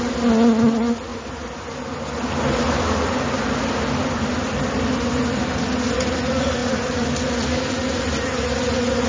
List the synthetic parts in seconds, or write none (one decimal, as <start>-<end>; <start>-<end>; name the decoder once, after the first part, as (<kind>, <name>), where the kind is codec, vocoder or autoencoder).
none